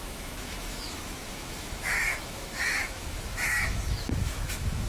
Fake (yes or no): yes